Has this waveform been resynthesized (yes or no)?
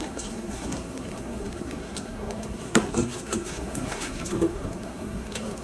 yes